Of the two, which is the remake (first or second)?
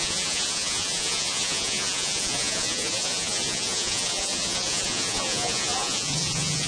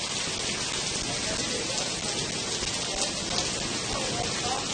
first